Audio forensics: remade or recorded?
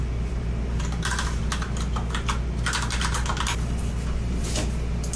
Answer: recorded